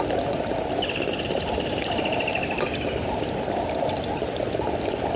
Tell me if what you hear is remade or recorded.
remade